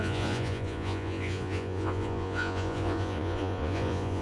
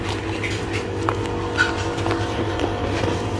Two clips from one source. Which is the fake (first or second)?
first